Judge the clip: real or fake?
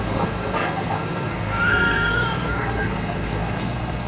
fake